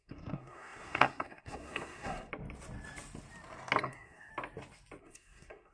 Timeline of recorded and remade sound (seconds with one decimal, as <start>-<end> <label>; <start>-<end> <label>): 0.0-2.3 remade; 2.3-3.8 recorded; 3.8-4.3 remade; 4.3-5.0 recorded; 5.0-5.7 remade